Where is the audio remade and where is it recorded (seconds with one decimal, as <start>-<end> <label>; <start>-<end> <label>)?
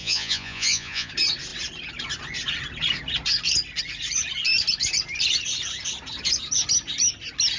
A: 0.0-1.1 remade; 1.1-7.6 recorded